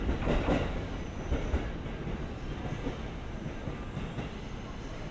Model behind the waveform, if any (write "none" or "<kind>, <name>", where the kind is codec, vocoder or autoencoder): none